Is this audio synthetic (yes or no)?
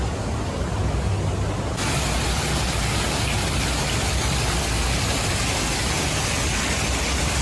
no